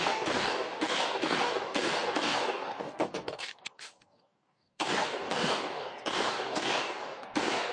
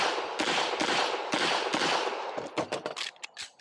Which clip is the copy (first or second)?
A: first